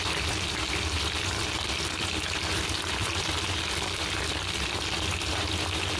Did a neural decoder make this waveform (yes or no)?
yes